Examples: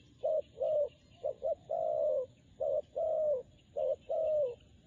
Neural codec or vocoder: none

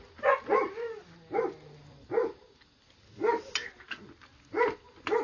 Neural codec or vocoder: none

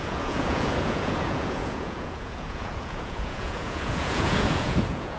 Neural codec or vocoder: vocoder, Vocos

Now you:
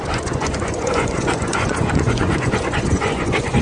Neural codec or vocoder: vocoder, Vocos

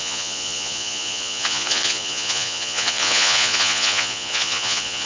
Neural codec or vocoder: vocoder, Vocos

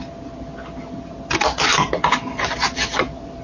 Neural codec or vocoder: none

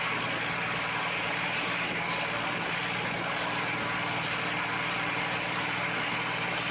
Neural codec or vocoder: none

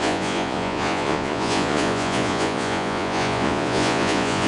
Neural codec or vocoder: vocoder, Vocos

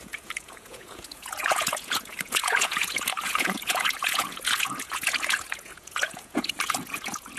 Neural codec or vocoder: vocoder, Vocos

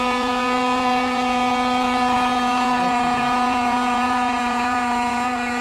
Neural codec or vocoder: vocoder, Vocos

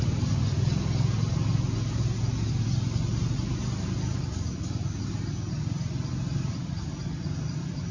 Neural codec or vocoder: none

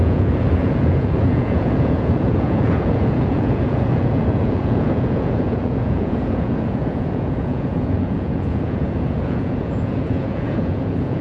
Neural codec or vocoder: vocoder, Vocos